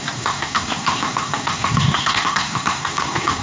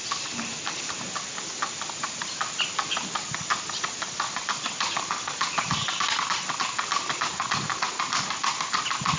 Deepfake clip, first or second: first